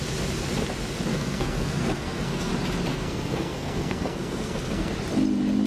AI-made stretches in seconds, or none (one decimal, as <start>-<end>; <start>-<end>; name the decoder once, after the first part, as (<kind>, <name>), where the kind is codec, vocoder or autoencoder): 1.1-2.5 (codec, SNAC); 2.9-4.9